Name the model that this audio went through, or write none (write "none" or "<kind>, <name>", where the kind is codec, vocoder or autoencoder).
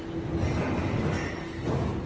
none